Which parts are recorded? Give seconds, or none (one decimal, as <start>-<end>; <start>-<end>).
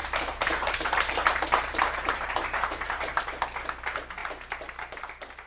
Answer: 3.3-5.5